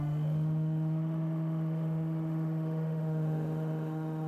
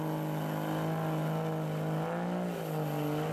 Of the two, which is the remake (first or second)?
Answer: first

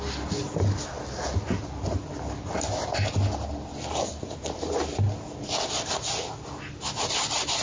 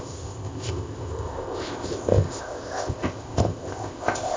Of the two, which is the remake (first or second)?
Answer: second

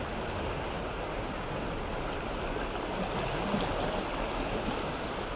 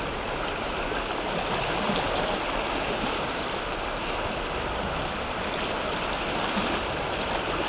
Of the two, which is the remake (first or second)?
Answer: second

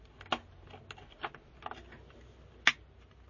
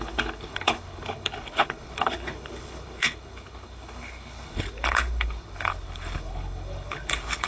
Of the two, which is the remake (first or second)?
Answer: second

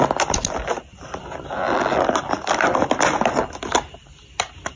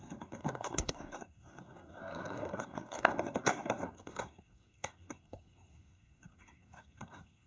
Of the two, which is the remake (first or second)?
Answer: second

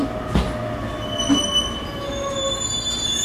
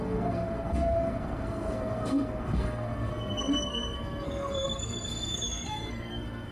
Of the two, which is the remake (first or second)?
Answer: second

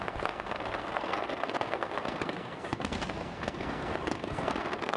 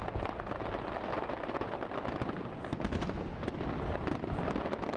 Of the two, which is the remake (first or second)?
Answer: first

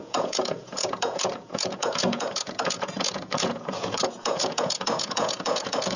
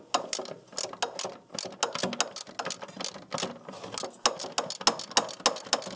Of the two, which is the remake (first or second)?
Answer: first